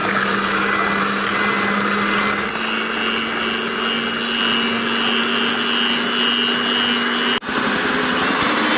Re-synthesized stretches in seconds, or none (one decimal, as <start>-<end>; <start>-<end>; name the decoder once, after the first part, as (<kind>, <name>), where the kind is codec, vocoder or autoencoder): none